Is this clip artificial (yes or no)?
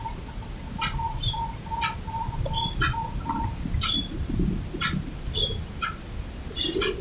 yes